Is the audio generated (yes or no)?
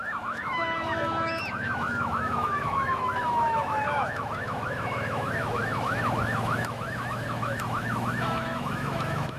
yes